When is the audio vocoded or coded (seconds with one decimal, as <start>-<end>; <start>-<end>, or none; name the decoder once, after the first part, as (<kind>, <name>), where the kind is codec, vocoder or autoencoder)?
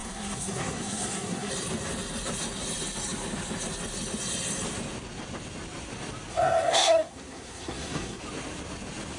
0.0-1.5 (codec, SNAC); 6.3-8.2